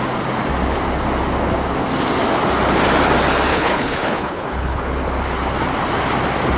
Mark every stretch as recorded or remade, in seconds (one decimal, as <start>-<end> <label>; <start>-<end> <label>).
0.0-3.5 recorded; 3.5-4.8 remade; 4.8-6.6 recorded